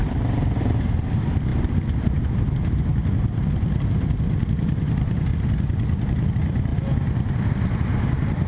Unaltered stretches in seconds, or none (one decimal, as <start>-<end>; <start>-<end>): 1.5-2.1; 5.3-6.3; 6.7-7.5